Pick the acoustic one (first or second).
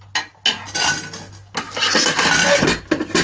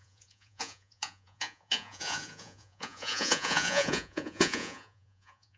first